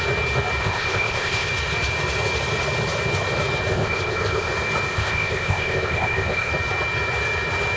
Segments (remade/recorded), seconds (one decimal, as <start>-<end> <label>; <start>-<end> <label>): 0.0-0.6 recorded; 0.6-1.5 remade; 1.5-3.7 recorded; 3.7-4.5 remade; 4.5-4.9 recorded; 4.9-6.5 remade; 6.5-7.8 recorded